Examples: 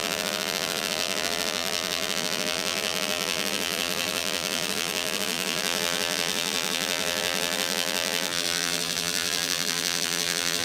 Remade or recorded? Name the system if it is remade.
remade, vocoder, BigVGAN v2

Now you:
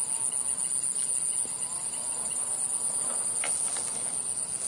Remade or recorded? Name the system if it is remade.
recorded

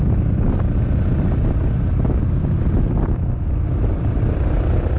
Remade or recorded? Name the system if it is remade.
recorded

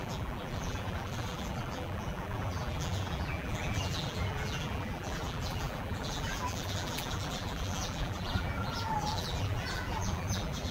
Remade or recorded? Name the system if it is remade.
remade, vocoder, BigVGAN v2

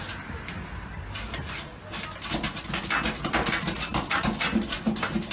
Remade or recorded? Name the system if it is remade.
recorded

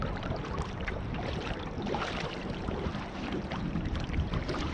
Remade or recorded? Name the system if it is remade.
remade, vocoder, BigVGAN v2